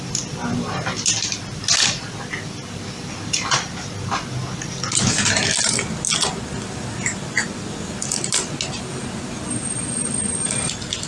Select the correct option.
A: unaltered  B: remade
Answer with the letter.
A